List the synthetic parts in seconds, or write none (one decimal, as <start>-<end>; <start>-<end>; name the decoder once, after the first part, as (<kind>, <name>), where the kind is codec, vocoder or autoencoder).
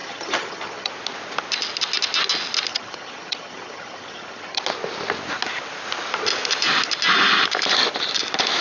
0.0-0.9 (vocoder, HiFi-GAN); 2.7-4.6